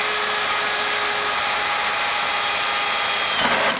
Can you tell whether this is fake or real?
real